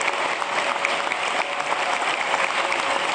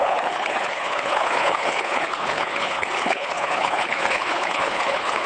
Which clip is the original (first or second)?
first